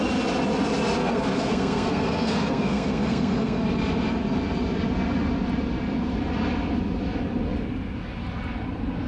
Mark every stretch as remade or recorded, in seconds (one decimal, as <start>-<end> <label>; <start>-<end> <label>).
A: 0.0-1.0 recorded; 1.0-3.6 remade; 3.6-9.1 recorded